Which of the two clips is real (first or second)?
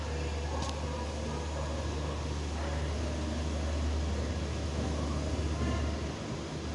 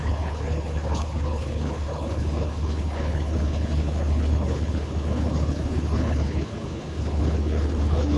first